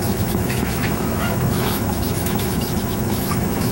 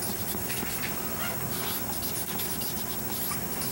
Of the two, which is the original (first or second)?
second